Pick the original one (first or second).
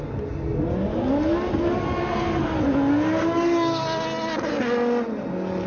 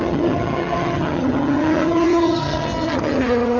first